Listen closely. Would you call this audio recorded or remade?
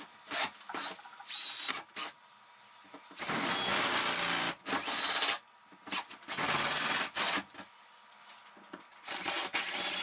recorded